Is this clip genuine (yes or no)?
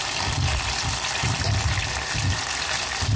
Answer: no